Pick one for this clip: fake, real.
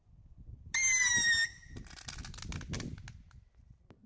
real